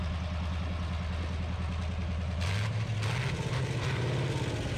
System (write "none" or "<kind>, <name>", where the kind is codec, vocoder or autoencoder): none